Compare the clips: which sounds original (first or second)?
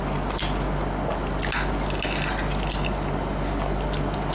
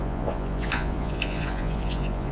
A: first